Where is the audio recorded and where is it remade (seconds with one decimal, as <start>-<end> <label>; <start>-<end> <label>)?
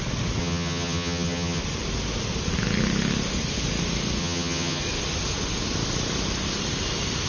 0.0-0.4 recorded; 0.4-1.6 remade; 1.6-4.2 recorded; 4.2-4.8 remade; 4.8-7.3 recorded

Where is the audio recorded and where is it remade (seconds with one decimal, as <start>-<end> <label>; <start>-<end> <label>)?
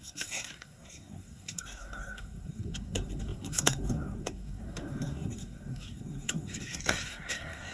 0.0-7.7 remade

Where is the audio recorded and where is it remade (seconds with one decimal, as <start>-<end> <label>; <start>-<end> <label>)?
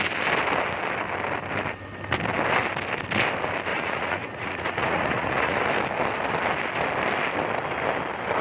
0.0-3.7 recorded; 3.7-5.6 remade; 5.6-8.4 recorded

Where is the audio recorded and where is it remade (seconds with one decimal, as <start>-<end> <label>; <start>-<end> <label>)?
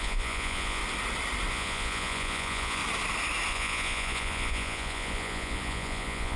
0.0-0.8 remade; 0.8-1.5 recorded; 1.5-2.8 remade; 2.8-3.5 recorded; 3.5-6.4 remade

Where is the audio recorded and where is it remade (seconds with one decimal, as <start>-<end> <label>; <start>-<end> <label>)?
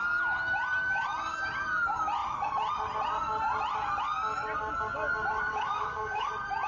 0.0-5.5 recorded; 5.5-6.3 remade; 6.3-6.7 recorded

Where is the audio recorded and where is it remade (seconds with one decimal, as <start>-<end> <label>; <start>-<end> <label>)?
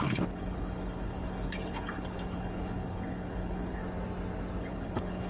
0.0-3.8 remade; 3.8-4.6 recorded; 4.6-5.3 remade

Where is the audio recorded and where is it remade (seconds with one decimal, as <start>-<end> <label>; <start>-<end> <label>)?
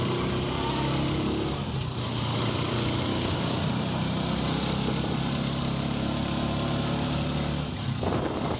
0.0-3.1 recorded; 3.1-3.6 remade; 3.6-8.6 recorded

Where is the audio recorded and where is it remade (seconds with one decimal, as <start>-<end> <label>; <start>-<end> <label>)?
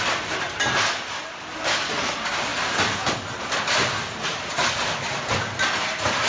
0.0-6.3 remade